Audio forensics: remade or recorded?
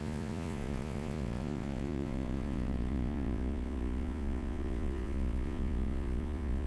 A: remade